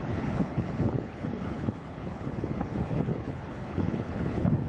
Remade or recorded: remade